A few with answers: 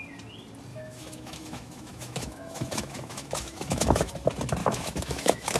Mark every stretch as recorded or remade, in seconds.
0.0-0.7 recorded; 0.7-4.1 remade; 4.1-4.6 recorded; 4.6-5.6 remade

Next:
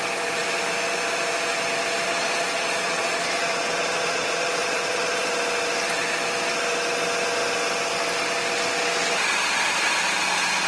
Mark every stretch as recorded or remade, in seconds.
0.0-2.1 recorded; 2.1-5.3 remade; 5.3-10.7 recorded

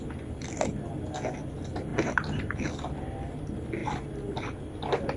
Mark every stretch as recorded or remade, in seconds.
0.0-1.9 recorded; 1.9-2.4 remade; 2.4-5.2 recorded

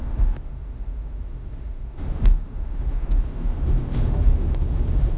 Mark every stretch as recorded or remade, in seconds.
0.0-5.2 remade